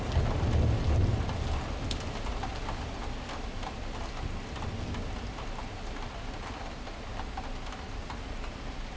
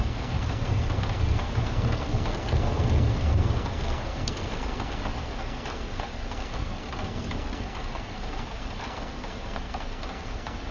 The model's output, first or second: second